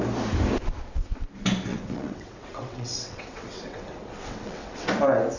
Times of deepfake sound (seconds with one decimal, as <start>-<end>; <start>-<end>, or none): 1.7-4.9